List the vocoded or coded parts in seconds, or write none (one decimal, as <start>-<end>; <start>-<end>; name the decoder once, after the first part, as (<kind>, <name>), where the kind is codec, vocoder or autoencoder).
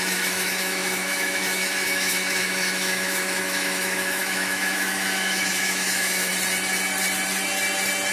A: 0.0-6.3 (autoencoder, DAC-VAE)